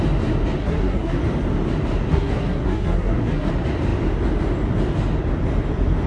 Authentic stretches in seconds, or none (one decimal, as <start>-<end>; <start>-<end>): 0.0-0.6; 1.2-2.1; 3.5-6.1

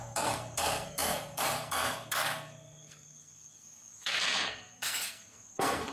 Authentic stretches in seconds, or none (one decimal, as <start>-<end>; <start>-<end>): none

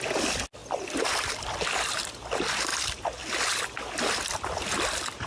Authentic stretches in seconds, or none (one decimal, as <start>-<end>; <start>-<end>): 0.0-5.3